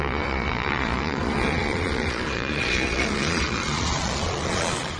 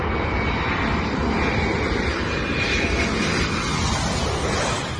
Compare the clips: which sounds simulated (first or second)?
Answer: first